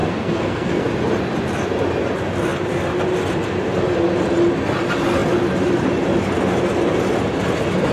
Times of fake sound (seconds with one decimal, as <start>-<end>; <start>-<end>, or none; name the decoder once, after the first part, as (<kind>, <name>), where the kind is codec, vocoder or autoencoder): 0.0-0.9 (codec, SNAC)